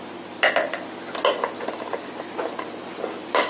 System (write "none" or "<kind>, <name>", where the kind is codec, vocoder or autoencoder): none